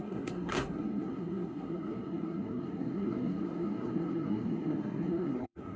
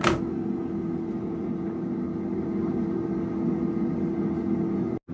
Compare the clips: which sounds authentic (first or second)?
second